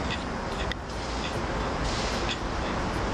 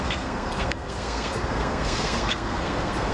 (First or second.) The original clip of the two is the first